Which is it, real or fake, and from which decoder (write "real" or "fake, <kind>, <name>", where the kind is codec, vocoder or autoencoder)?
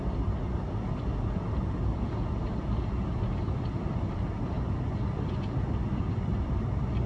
real